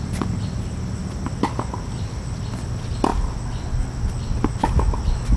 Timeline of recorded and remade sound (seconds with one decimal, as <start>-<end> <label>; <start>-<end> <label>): 0.0-5.4 recorded